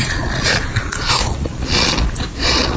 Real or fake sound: fake